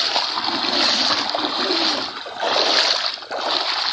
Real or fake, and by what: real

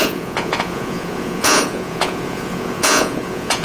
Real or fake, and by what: fake, vocoder, Vocos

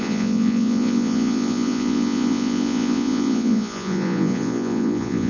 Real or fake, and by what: fake, vocoder, Vocos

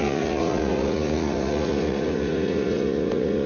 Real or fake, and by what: fake, vocoder, Vocos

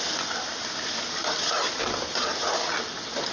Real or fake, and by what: real